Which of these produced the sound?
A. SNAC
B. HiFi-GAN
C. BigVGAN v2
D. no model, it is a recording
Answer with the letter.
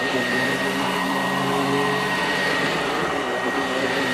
C